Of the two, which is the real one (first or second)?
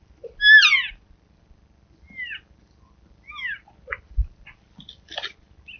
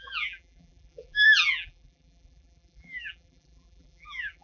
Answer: first